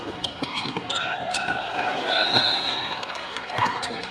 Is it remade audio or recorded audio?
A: remade